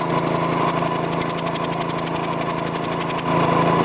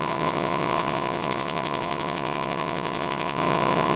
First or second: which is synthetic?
second